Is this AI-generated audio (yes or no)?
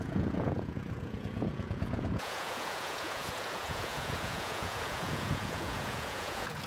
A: yes